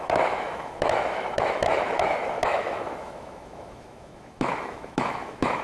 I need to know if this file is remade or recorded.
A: remade